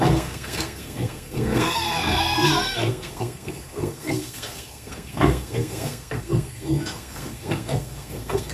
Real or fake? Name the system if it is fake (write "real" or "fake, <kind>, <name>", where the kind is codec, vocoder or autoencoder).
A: fake, codec, SNAC